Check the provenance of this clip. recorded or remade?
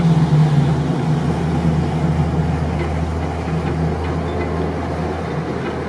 recorded